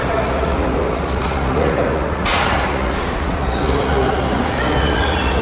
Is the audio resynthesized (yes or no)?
yes